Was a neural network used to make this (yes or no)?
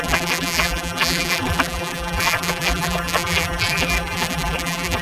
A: yes